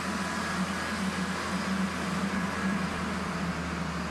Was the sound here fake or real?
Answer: real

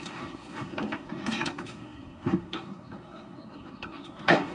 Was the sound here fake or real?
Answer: fake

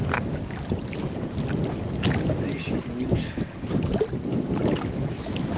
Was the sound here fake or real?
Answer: real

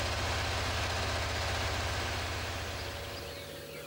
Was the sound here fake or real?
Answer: real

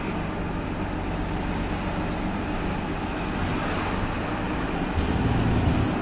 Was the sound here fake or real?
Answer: real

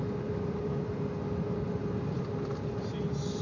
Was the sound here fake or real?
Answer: real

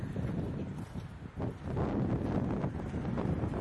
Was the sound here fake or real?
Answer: real